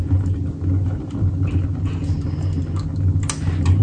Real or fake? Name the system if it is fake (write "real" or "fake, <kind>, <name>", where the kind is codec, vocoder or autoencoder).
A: real